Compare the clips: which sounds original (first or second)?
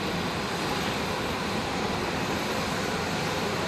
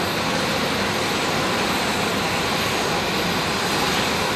second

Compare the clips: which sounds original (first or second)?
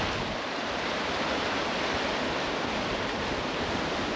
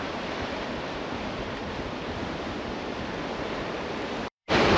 first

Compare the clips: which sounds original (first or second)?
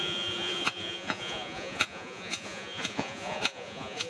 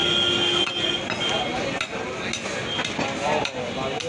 second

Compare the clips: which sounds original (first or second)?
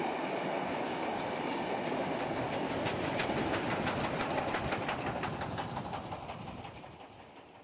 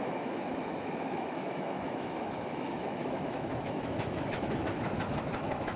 first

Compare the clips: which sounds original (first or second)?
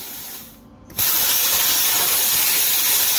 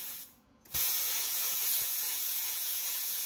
first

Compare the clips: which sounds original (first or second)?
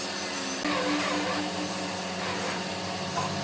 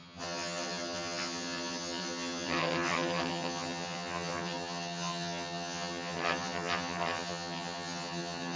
first